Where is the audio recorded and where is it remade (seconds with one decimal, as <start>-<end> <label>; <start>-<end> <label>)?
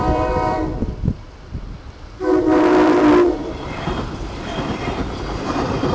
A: 0.0-0.6 remade; 0.6-2.4 recorded; 2.4-5.9 remade